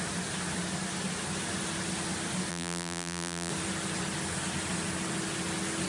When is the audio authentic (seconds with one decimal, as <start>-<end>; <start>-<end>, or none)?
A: 0.0-2.5; 3.5-5.9